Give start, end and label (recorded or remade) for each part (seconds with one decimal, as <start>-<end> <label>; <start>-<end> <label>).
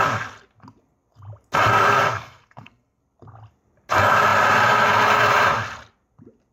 0.0-1.7 recorded; 1.7-3.0 remade; 3.0-6.5 recorded